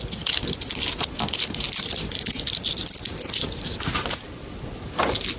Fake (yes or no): no